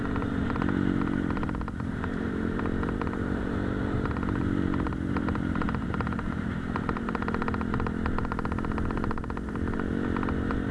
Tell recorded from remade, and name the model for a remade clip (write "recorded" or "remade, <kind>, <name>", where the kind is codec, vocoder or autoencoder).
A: remade, vocoder, BigVGAN v2